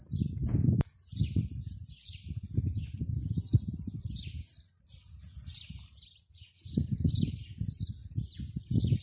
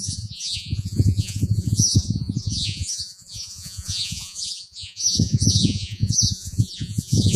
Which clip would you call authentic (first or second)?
first